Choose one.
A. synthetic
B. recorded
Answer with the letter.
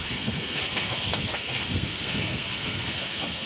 A